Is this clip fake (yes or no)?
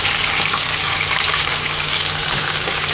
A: yes